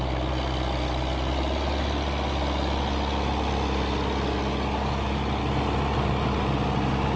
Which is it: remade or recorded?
recorded